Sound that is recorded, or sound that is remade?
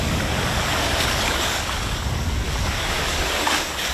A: remade